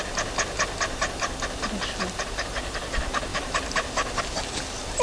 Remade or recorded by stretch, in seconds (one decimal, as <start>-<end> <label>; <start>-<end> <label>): 0.0-3.3 recorded; 3.3-4.2 remade; 4.2-5.0 recorded